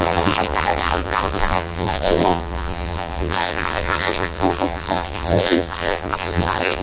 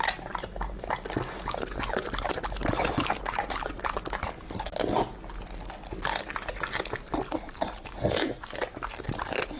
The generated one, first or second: first